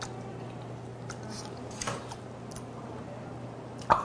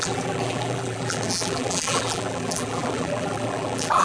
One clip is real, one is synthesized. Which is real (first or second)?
first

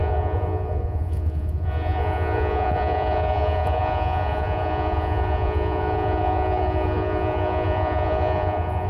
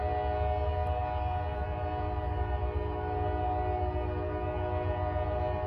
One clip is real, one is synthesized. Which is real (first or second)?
second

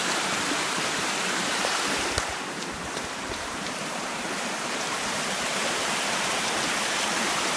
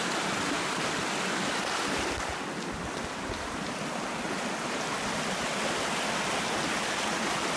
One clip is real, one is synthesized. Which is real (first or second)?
second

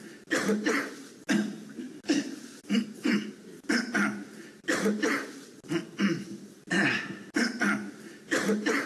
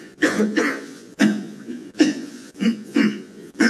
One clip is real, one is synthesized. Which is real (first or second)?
first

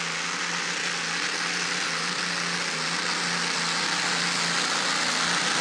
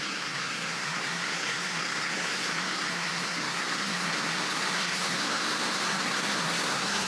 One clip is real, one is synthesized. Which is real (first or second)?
first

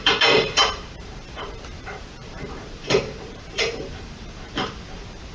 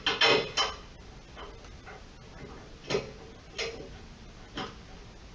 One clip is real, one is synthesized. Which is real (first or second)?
second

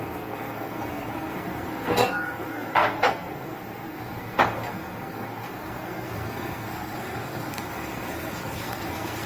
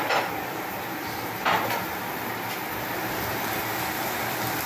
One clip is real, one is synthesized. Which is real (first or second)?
second